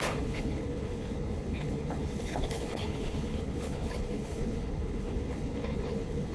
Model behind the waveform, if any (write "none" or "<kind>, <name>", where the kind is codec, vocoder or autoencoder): codec, HILCodec